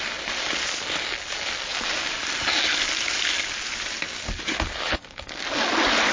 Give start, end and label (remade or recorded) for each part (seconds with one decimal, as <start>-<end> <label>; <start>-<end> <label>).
0.0-6.1 recorded